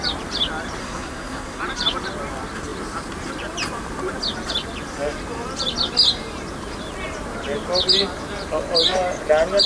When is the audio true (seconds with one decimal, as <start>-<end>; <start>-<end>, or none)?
0.0-0.8; 1.6-9.7